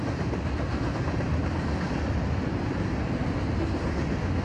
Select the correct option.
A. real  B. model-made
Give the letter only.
A